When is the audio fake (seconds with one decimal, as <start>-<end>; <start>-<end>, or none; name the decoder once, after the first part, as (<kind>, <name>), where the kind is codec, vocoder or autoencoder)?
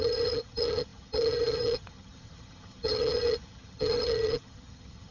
0.0-5.1 (vocoder, HiFi-GAN)